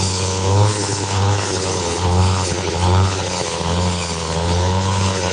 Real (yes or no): no